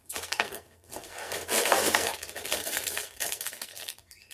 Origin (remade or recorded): remade